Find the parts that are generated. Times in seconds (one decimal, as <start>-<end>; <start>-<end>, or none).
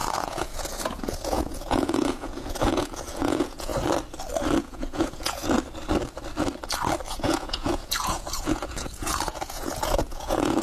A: 0.0-3.7; 4.6-5.4; 7.1-10.6